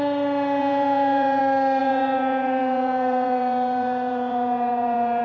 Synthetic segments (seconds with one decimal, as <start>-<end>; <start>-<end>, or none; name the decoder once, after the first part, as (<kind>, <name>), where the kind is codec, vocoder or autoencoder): 0.6-1.4 (vocoder, Vocos); 1.8-5.2